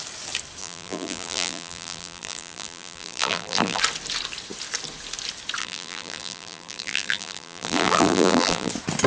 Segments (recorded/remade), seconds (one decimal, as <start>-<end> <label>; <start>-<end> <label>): 0.0-0.6 recorded; 0.6-3.8 remade; 3.8-5.6 recorded; 5.6-8.7 remade; 8.7-9.1 recorded